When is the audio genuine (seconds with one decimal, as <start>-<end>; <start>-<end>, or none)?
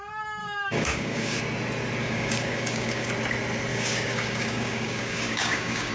0.0-0.4; 1.4-2.0; 3.1-3.7